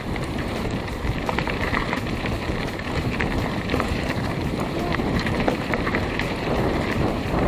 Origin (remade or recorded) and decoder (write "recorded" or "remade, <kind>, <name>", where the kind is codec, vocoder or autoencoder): remade, vocoder, BigVGAN v2